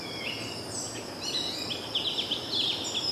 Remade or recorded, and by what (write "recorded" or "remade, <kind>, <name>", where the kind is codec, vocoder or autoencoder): remade, vocoder, BigVGAN v2